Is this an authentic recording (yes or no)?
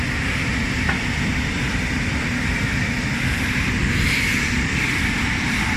no